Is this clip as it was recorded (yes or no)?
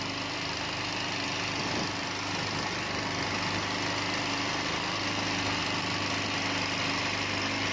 yes